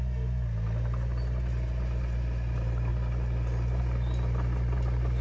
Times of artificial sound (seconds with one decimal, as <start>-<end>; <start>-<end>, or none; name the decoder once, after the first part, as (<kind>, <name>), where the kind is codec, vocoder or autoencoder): none

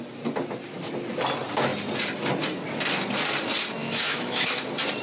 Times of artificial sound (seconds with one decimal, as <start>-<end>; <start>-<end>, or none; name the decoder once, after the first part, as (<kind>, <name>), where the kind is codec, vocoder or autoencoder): 3.8-4.6 (autoencoder, DAC-VAE)

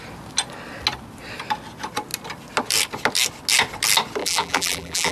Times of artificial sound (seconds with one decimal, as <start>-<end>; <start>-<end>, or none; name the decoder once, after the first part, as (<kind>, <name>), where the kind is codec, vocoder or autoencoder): 4.2-5.1 (vocoder, BigVGAN v2)

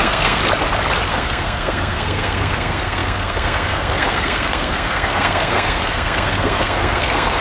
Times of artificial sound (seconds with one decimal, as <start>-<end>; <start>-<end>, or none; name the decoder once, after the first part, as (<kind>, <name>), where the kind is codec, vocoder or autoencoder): 0.0-0.4 (codec, SNAC); 1.1-7.4

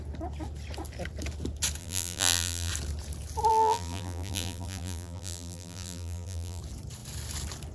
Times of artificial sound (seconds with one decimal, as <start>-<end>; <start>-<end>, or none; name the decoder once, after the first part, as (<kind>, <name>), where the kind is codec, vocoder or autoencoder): 1.8-2.7 (vocoder, BigVGAN v2); 3.5-6.6